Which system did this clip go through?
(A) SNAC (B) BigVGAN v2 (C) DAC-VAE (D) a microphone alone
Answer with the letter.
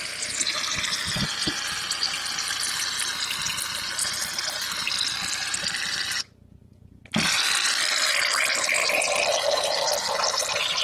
D